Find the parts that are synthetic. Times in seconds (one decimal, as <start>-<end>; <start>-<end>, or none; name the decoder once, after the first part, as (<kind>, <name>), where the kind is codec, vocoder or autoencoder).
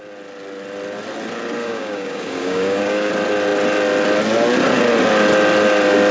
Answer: 1.6-3.1 (codec, DAC)